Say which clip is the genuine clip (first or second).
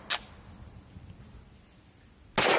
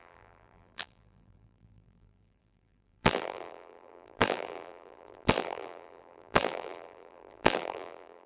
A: first